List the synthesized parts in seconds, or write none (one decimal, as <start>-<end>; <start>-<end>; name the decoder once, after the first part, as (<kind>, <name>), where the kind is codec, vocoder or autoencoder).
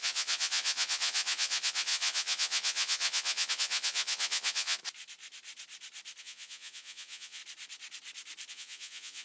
0.0-4.8 (vocoder, Vocos); 6.2-7.4; 8.5-9.2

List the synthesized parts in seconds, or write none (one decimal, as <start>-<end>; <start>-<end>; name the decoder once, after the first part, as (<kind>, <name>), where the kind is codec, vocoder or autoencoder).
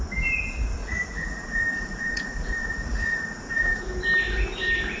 0.8-3.8 (vocoder, Vocos)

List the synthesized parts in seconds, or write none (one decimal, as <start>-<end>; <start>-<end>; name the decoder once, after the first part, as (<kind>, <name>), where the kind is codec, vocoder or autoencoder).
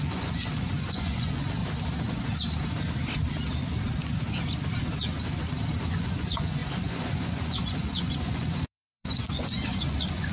0.0-1.6 (vocoder, Vocos); 5.9-10.3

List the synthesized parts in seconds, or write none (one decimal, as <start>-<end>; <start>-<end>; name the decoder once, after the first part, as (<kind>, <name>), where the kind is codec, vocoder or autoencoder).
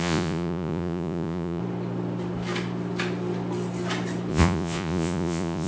0.0-1.6 (vocoder, Vocos); 4.3-5.7